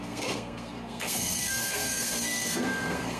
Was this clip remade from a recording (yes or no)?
yes